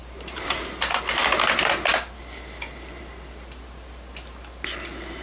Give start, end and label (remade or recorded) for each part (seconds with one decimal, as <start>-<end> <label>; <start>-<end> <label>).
0.0-1.2 remade; 1.2-5.2 recorded